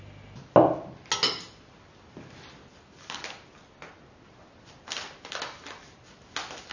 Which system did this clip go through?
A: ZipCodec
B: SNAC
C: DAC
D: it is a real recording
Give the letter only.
D